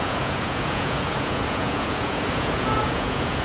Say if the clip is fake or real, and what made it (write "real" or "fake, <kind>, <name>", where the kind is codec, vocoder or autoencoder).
fake, vocoder, Vocos